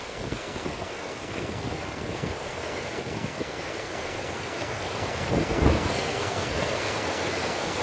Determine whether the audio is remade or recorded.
remade